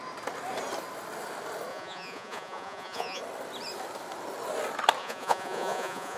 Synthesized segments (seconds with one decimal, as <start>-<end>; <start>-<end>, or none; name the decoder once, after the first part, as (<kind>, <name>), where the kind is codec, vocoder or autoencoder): 1.7-3.2 (vocoder, Vocos); 5.0-6.2